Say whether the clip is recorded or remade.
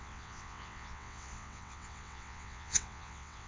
remade